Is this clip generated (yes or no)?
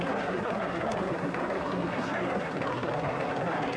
yes